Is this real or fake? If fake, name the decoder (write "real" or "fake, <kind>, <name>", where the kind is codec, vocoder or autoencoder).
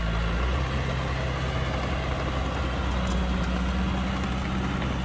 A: real